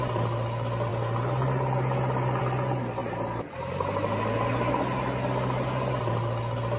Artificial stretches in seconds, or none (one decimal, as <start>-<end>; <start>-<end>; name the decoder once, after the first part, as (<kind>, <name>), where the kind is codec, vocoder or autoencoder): none